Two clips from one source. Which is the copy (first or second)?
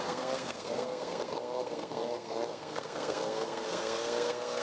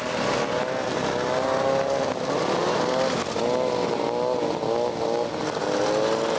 first